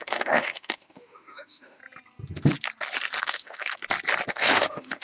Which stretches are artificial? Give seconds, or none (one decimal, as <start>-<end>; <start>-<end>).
0.0-1.8; 3.2-3.8; 4.3-5.0